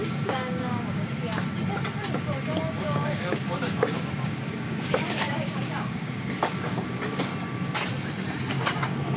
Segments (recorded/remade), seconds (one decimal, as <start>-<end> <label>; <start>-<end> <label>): 0.0-1.2 remade; 1.2-2.7 recorded; 2.7-7.3 remade; 7.3-8.5 recorded; 8.5-9.2 remade